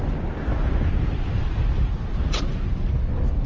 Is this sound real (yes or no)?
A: yes